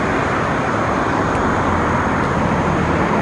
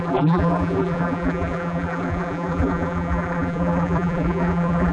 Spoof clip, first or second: second